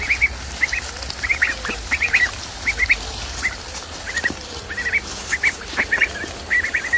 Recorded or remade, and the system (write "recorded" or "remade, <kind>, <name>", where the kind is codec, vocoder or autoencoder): recorded